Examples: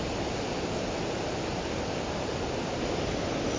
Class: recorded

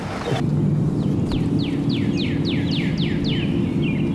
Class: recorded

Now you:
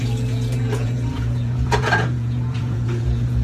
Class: remade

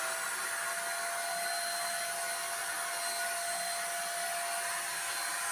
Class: recorded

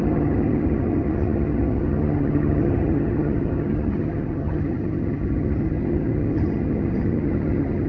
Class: remade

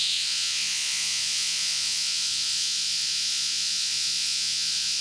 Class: remade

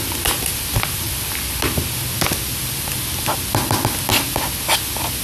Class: recorded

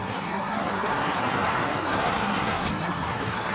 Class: remade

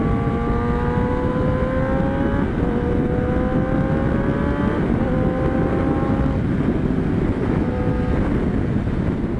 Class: recorded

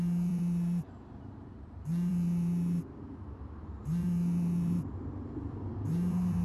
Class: remade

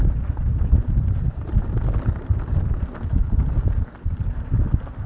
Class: recorded